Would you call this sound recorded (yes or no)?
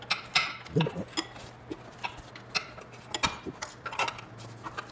yes